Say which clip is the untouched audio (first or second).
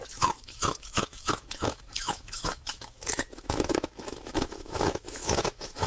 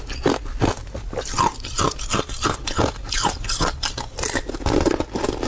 second